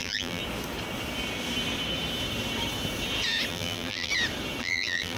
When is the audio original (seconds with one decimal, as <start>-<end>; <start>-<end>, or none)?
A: 0.4-3.5; 4.1-4.6